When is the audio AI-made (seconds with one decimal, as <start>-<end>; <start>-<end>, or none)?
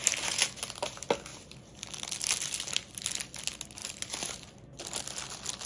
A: 1.3-3.1; 3.8-5.2